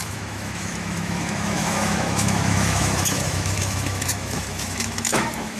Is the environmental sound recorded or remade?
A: remade